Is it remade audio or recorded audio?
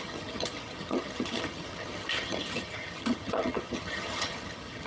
remade